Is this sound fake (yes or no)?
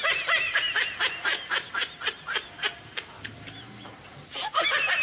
yes